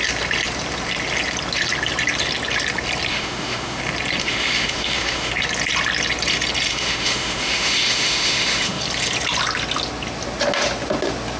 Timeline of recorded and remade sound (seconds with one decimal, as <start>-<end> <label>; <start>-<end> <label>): 0.0-3.1 recorded; 3.1-3.8 remade; 3.8-4.2 recorded; 4.2-5.3 remade; 5.3-6.7 recorded; 6.7-8.8 remade; 8.8-11.4 recorded